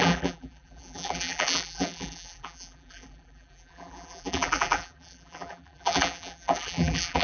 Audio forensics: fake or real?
fake